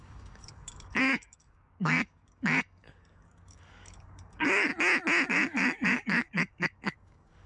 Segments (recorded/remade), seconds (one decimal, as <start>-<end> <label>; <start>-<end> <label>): 0.0-4.7 remade; 4.7-5.3 recorded; 5.3-7.5 remade